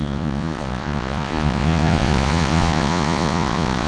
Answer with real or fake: fake